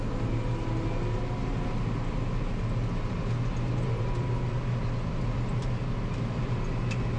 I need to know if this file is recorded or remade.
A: recorded